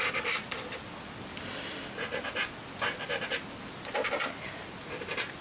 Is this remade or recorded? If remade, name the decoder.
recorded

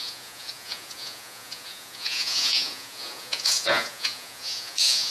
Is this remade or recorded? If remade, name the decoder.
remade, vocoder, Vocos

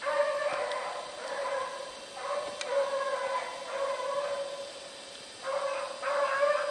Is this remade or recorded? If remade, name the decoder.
recorded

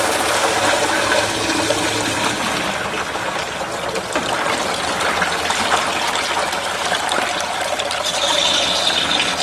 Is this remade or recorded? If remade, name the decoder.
recorded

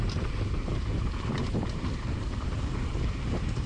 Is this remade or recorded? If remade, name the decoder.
remade, vocoder, BigVGAN v2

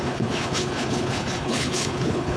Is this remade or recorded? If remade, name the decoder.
remade, codec, HILCodec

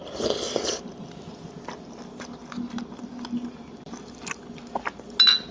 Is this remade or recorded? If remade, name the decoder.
recorded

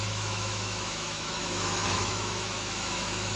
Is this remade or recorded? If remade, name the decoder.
remade, autoencoder, DAC-VAE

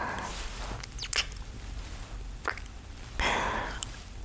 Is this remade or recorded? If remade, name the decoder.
recorded